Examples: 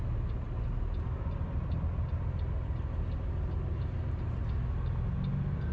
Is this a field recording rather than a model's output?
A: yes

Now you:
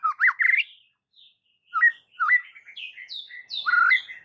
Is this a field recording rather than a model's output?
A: yes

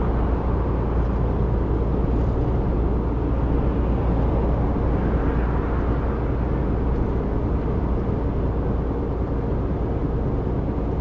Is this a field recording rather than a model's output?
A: yes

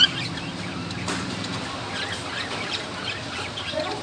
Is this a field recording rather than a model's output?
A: yes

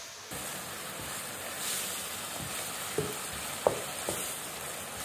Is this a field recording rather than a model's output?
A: yes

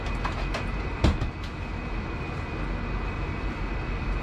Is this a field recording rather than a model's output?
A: yes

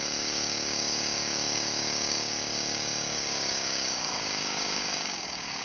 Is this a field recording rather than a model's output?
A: no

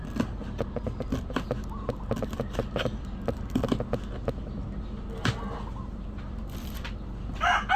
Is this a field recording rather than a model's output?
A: yes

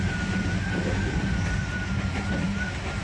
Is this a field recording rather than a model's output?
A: yes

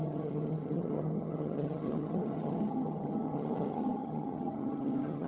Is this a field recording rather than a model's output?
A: no